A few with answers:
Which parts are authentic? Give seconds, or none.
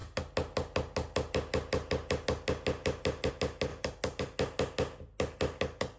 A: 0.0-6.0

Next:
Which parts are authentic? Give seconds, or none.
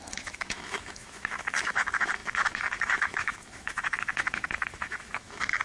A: none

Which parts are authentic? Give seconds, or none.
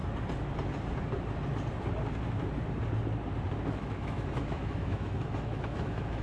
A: 0.0-3.7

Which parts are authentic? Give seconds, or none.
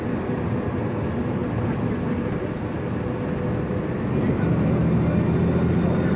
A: 0.0-6.2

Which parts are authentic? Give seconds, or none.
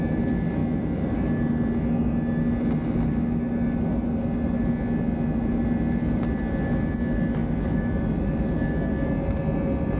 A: 0.0-10.0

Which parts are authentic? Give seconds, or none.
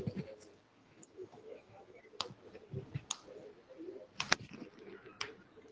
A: 0.0-0.8; 2.0-5.7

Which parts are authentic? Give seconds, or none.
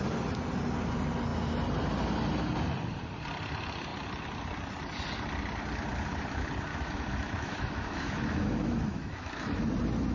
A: 0.0-6.7; 9.6-10.1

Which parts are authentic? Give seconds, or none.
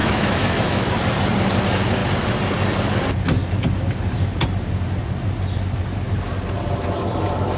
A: 0.9-7.6